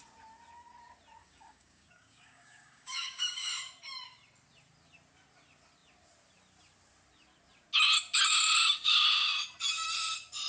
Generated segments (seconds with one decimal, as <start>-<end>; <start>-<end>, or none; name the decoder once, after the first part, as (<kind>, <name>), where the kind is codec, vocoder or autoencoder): 1.2-3.5 (codec, DAC)